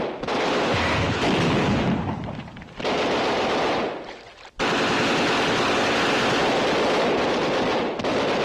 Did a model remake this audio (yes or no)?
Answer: no